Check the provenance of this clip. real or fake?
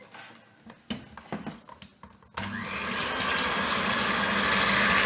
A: real